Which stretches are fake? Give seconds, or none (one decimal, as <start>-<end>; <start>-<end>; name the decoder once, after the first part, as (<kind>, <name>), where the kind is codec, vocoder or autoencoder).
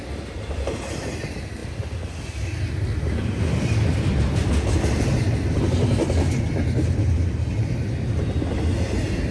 none